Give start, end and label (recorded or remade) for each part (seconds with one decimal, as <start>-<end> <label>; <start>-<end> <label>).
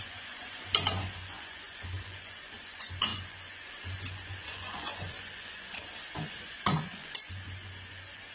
0.0-8.3 remade